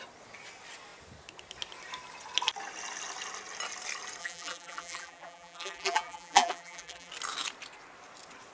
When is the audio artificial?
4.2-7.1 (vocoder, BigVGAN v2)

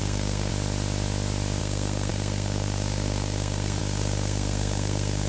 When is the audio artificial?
0.0-0.5 (codec, SNAC); 1.6-5.3

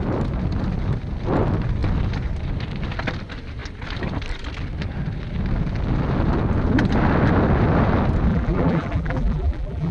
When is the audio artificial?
8.3-9.9 (vocoder, BigVGAN v2)

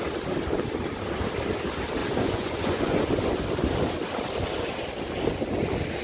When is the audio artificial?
2.0-3.0 (vocoder, Vocos)

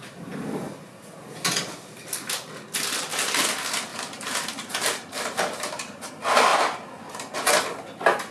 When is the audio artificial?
3.9-6.1 (vocoder, BigVGAN v2)

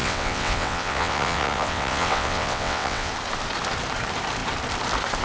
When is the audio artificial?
0.0-3.1 (vocoder, WaveNeXt)

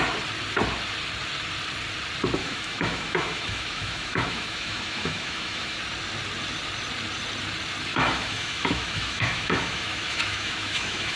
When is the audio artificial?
2.4-5.8 (autoencoder, DAC-VAE); 7.9-11.2

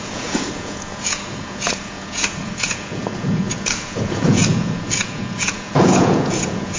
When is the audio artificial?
0.0-6.8 (vocoder, Vocos)